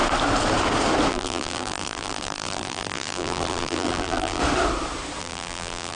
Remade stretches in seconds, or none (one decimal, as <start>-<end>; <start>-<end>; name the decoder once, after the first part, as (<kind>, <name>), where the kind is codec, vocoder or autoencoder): 1.1-4.4 (vocoder, BigVGAN v2); 5.2-5.9